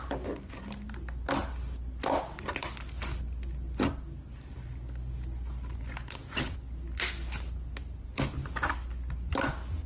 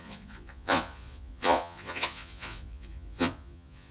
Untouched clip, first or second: first